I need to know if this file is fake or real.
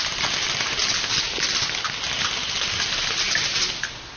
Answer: real